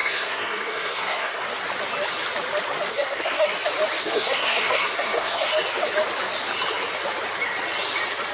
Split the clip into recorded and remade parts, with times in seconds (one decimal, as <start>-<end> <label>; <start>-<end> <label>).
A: 0.0-1.4 remade; 1.4-2.9 recorded; 2.9-3.5 remade; 3.5-4.0 recorded; 4.0-5.5 remade; 5.5-8.3 recorded